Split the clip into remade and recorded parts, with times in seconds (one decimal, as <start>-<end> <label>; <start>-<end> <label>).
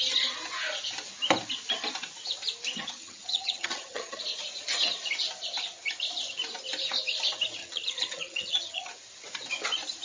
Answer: 0.0-2.8 recorded; 2.8-4.2 remade; 4.2-7.6 recorded; 7.6-8.9 remade; 8.9-10.0 recorded